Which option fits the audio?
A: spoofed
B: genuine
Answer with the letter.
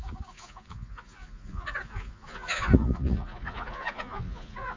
A